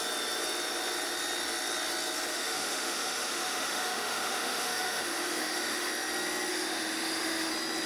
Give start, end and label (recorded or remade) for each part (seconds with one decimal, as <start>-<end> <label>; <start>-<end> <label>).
0.0-2.3 recorded; 2.3-5.9 remade; 5.9-6.5 recorded; 6.5-7.5 remade; 7.5-7.9 recorded